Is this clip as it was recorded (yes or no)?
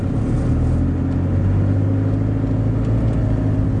yes